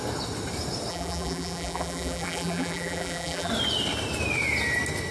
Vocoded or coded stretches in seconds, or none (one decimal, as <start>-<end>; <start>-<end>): 0.9-3.5

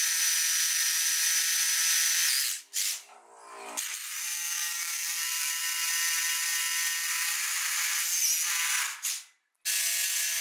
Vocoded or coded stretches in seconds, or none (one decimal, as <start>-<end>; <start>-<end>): 4.0-5.6

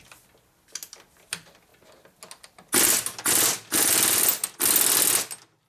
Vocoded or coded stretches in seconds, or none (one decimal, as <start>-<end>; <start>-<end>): none